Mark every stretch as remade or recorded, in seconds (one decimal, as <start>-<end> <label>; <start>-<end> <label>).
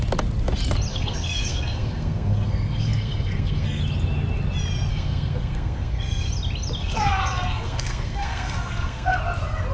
0.0-0.9 recorded; 0.9-3.8 remade; 3.8-4.9 recorded; 4.9-6.3 remade; 6.3-6.8 recorded; 6.8-9.2 remade; 9.2-9.7 recorded